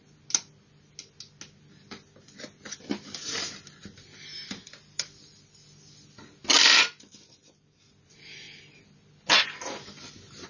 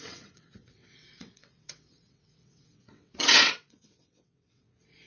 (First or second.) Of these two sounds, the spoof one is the second